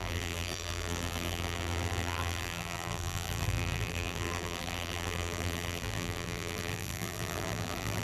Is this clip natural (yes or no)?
no